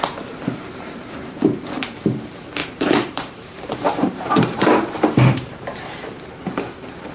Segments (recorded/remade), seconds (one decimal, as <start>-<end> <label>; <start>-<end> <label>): 0.0-2.6 recorded; 2.6-6.1 remade; 6.1-7.1 recorded